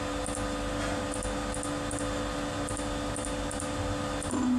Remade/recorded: recorded